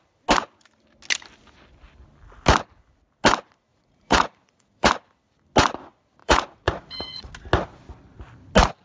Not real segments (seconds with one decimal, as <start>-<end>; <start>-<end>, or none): 3.7-4.9; 6.2-7.3